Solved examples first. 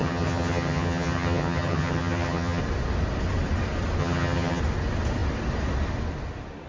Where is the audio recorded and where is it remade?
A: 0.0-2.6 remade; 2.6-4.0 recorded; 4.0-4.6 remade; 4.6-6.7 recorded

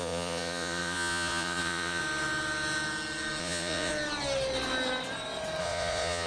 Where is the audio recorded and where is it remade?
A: 0.0-2.0 remade; 2.0-3.4 recorded; 3.4-3.9 remade; 3.9-5.6 recorded; 5.6-6.3 remade